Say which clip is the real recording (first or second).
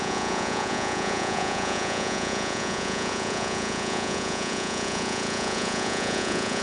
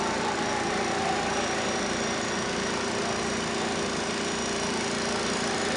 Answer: second